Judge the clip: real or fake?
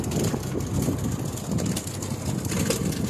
real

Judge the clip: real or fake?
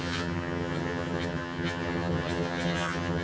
fake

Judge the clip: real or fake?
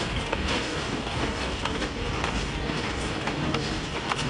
fake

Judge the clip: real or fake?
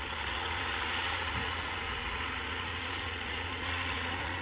fake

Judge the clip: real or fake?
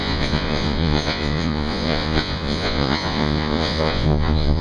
fake